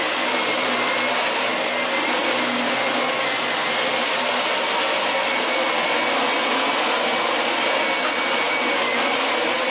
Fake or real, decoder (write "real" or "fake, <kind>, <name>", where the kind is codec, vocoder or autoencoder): real